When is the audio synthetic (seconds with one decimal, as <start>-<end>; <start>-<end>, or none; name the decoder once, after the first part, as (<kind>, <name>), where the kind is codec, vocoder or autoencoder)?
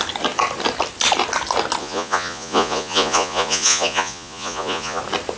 1.8-5.0 (vocoder, Vocos)